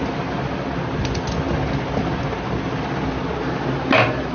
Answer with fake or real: real